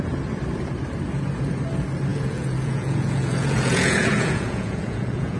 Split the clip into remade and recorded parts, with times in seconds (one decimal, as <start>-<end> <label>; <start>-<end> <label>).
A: 0.0-2.1 recorded; 2.1-5.4 remade

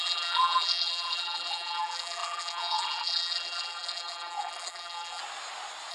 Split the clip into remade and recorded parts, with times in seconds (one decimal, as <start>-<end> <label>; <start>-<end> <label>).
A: 0.0-5.2 remade; 5.2-5.9 recorded